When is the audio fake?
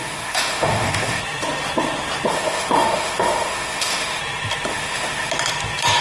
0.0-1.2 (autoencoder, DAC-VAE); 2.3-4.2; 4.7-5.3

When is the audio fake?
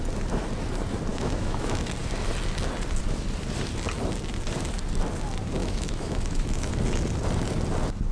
1.1-1.9 (autoencoder, DAC-VAE); 5.6-6.7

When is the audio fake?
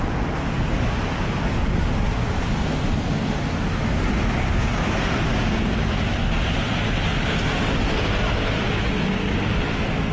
none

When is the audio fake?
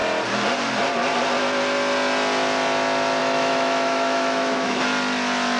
3.2-4.8 (autoencoder, DAC-VAE)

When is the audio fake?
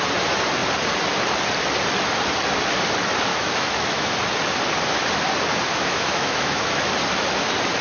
3.3-4.1 (autoencoder, DAC-VAE); 5.7-6.9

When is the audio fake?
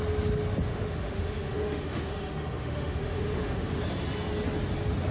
0.7-3.8 (autoencoder, DAC-VAE)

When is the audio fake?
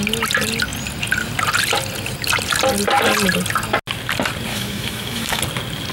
4.5-5.4 (autoencoder, DAC-VAE)